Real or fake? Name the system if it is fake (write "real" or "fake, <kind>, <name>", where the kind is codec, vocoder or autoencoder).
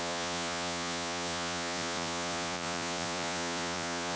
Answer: fake, vocoder, Vocos